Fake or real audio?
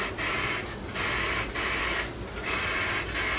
real